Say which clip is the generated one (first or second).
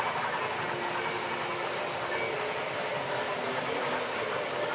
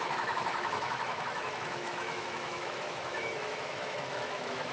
second